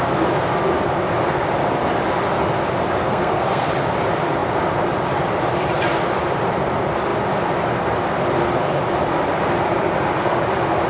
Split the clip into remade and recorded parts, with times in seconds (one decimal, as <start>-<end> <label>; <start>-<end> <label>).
0.0-3.0 recorded; 3.0-3.7 remade; 3.7-10.9 recorded